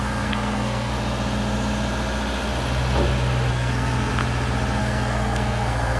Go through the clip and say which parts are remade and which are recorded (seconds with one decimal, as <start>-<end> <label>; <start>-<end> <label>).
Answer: 0.0-0.9 remade; 0.9-3.5 recorded; 3.5-4.1 remade; 4.1-4.8 recorded; 4.8-6.0 remade